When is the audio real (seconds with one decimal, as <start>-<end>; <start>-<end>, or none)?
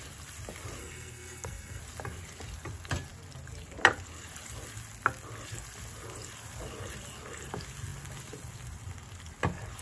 0.0-0.8; 1.8-9.8